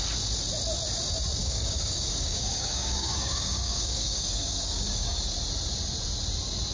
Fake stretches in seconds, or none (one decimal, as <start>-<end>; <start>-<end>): 1.4-5.2